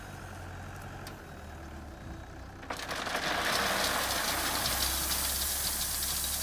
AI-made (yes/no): no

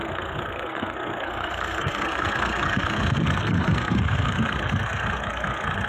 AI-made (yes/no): yes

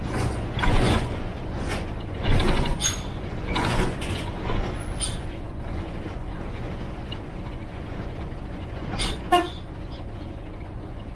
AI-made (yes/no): yes